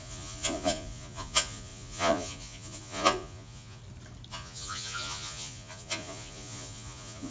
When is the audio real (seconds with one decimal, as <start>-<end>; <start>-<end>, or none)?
3.8-4.3